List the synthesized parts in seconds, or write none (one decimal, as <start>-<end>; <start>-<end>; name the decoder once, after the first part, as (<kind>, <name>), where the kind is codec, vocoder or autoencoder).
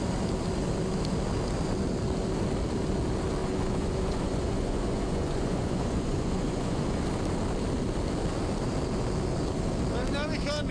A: 3.4-7.0 (vocoder, Vocos)